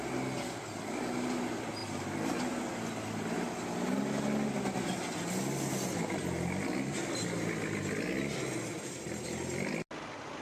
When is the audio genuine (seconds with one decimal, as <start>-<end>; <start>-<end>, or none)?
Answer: 0.0-10.4